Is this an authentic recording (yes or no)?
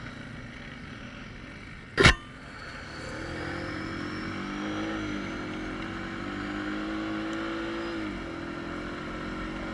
yes